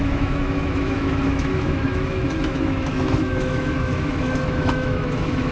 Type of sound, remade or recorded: remade